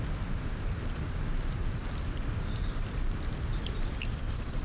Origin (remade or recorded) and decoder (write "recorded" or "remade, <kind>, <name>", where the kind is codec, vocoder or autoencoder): recorded